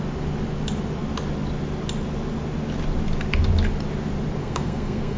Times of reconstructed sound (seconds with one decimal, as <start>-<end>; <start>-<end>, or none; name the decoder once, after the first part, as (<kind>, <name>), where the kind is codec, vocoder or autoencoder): 4.4-5.2 (codec, SNAC)